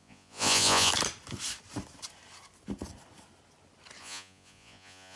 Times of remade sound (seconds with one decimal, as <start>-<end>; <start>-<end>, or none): 0.0-0.9; 4.0-5.2